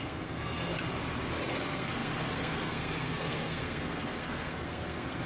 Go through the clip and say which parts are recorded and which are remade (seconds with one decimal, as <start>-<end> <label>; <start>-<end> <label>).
0.0-0.7 remade; 0.7-1.5 recorded; 1.5-5.3 remade